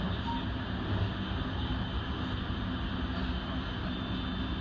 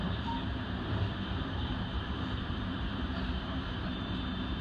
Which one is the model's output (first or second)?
second